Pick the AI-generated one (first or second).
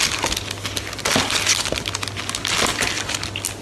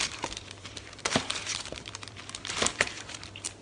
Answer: second